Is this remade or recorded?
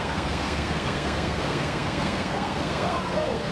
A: remade